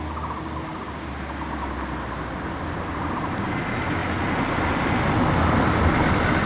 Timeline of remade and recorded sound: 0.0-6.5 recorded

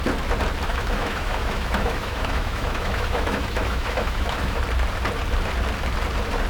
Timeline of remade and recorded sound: 0.0-0.7 recorded; 0.7-4.6 remade; 4.6-6.5 recorded

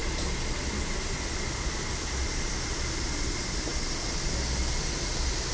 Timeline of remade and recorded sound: 0.0-5.5 recorded